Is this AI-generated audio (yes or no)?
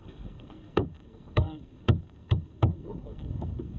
yes